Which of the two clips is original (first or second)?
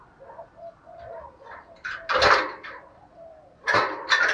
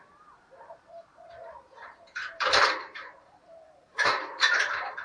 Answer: first